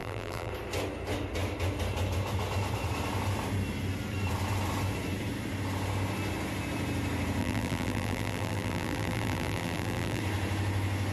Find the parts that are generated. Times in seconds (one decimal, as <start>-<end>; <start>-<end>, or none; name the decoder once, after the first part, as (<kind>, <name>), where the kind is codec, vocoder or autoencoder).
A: 0.0-0.5 (vocoder, BigVGAN v2); 7.4-10.2

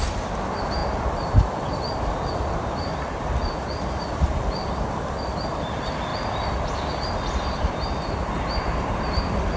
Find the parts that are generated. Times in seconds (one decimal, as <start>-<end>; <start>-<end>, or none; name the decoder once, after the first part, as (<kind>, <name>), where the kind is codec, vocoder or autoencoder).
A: 0.0-0.8 (vocoder, BigVGAN v2); 5.6-6.1; 6.7-9.6